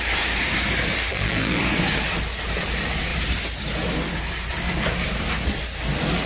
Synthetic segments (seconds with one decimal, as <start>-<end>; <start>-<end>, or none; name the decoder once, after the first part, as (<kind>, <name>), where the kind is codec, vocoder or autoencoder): 1.1-1.6 (vocoder, BigVGAN v2)